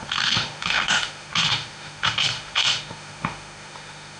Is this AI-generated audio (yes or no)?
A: yes